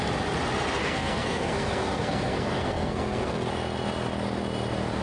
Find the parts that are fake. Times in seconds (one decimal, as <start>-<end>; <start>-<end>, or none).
0.8-3.5